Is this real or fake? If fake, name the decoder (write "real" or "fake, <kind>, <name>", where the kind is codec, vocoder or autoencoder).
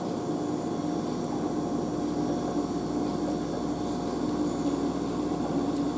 real